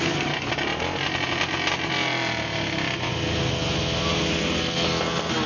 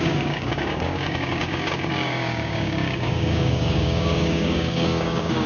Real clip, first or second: first